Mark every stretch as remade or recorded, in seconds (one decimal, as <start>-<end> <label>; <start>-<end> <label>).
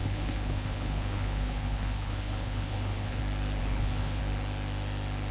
0.0-3.2 remade; 3.2-3.6 recorded; 3.6-4.2 remade; 4.2-5.3 recorded